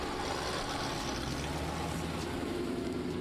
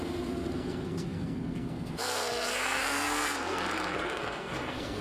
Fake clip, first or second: second